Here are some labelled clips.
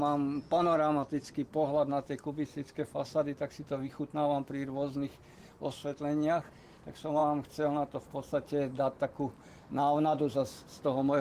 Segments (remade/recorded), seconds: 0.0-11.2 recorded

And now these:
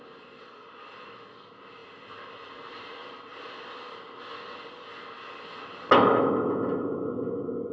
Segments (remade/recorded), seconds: 0.0-7.7 recorded

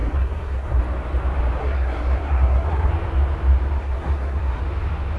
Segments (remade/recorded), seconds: 0.0-0.8 remade; 0.8-1.6 recorded; 1.6-2.9 remade; 2.9-3.8 recorded; 3.8-4.6 remade; 4.6-5.2 recorded

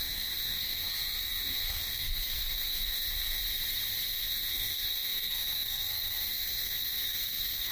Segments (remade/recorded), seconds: 0.0-3.4 remade; 3.4-4.1 recorded; 4.1-7.7 remade

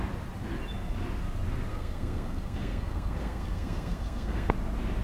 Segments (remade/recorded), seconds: 0.0-1.7 recorded; 1.7-4.5 remade; 4.5-5.0 recorded

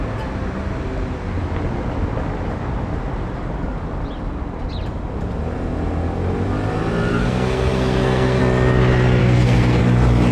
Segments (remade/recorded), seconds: 0.0-7.1 recorded; 7.1-8.4 remade; 8.4-9.2 recorded; 9.2-9.8 remade; 9.8-10.3 recorded

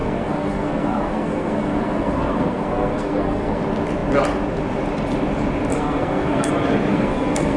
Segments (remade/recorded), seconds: 0.0-3.6 remade; 3.6-5.7 recorded; 5.7-6.5 remade; 6.5-6.9 recorded; 6.9-7.6 remade